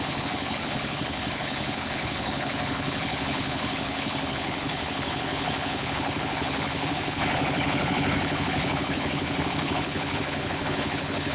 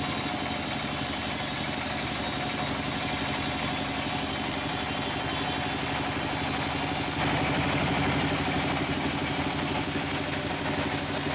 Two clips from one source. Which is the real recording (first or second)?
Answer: second